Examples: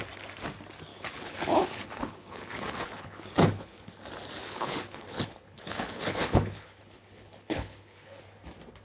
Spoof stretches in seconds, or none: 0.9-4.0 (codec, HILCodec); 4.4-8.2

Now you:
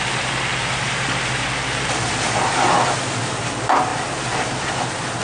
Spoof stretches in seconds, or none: none

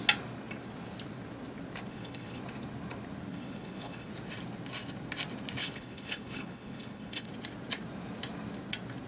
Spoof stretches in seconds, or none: 1.9-2.4 (codec, HILCodec); 3.3-4.1; 5.6-7.3

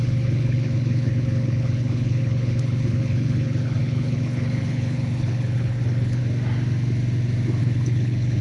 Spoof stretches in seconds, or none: 0.0-6.2 (codec, HILCodec); 7.6-8.4

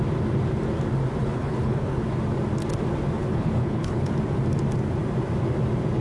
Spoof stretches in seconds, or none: 1.2-2.0 (codec, HILCodec); 3.2-4.1

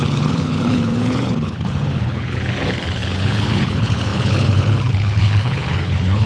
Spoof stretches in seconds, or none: 0.0-6.3 (codec, HILCodec)